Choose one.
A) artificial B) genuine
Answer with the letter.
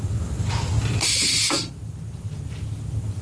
B